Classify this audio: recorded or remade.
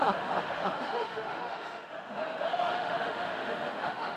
remade